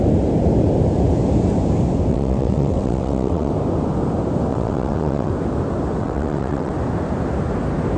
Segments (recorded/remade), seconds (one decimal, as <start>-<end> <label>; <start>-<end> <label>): 0.0-2.1 recorded; 2.1-3.5 remade; 3.5-4.5 recorded; 4.5-5.3 remade; 5.3-6.0 recorded; 6.0-6.7 remade; 6.7-8.0 recorded